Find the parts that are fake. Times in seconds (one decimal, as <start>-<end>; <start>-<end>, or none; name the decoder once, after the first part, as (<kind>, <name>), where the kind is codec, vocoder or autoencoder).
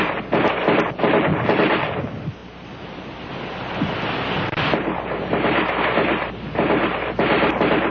none